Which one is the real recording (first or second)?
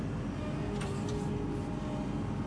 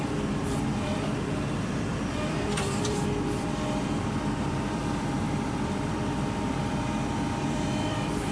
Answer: first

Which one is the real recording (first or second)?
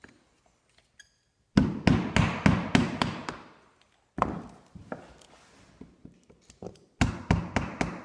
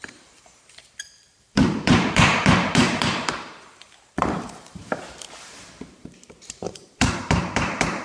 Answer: first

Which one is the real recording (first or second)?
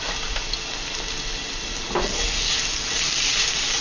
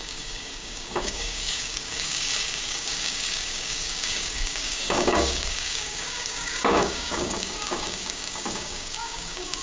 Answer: first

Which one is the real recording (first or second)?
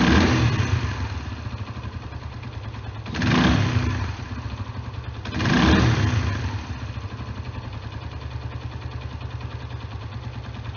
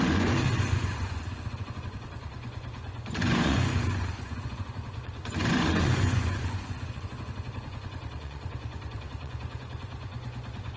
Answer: first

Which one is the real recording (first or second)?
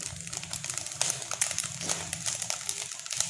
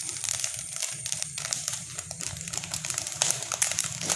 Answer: first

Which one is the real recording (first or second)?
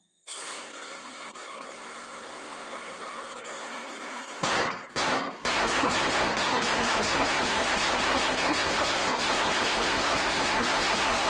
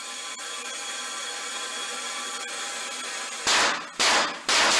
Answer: second